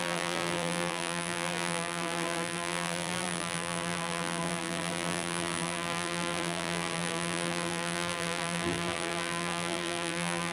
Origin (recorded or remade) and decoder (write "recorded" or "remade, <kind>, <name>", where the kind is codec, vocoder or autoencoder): remade, vocoder, BigVGAN v2